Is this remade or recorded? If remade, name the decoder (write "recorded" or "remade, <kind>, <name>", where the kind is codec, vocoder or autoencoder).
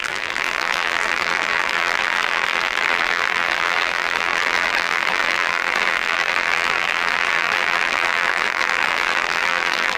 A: remade, vocoder, BigVGAN v2